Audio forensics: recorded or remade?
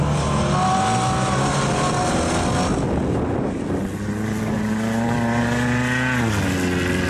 recorded